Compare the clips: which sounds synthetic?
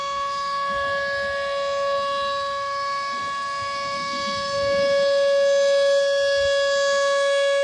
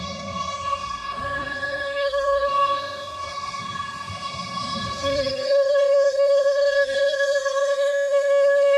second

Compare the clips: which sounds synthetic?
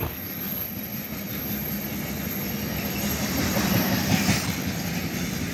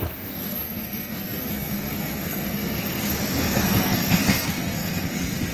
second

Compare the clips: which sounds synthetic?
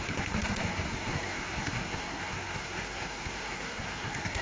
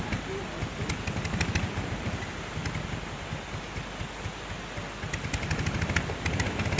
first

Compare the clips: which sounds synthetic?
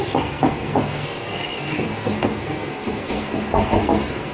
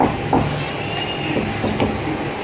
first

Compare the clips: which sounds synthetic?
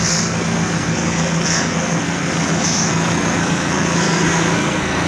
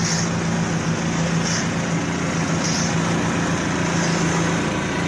first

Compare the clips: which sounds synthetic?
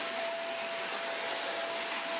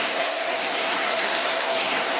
second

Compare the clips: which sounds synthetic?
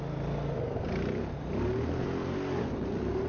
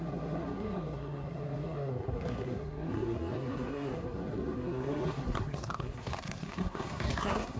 second